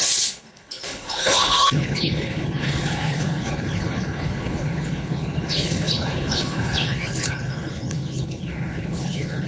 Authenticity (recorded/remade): remade